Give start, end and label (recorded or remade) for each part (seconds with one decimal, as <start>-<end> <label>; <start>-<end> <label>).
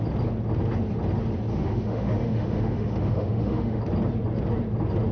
0.0-1.5 recorded; 1.5-3.8 remade; 3.8-5.1 recorded